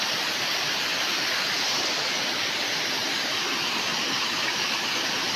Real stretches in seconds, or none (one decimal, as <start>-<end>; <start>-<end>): 0.0-0.9; 2.5-5.4